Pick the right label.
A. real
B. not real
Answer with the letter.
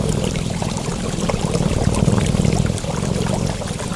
A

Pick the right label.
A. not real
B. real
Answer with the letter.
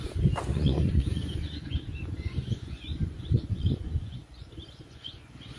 A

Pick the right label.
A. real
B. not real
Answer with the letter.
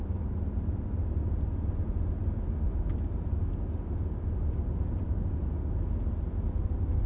A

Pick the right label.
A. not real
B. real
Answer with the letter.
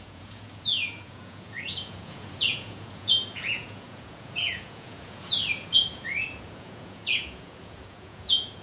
A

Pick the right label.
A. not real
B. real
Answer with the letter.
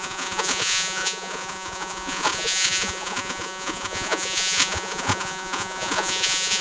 A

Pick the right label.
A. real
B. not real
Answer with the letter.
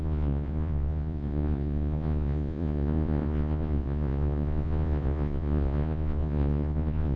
B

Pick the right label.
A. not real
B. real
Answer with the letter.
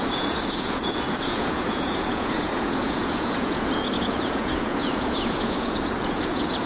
A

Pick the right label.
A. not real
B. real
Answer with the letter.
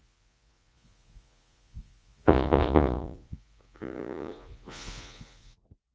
A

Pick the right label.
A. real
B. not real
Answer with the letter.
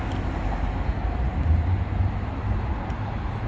A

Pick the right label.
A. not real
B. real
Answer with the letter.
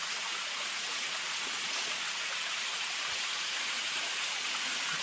A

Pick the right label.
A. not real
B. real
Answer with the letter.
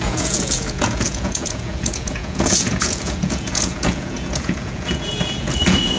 A